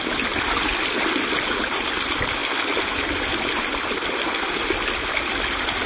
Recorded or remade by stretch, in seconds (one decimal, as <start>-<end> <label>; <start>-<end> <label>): 0.0-5.9 recorded